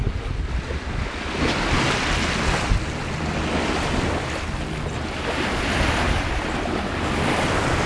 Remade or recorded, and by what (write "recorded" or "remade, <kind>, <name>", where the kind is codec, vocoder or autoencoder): recorded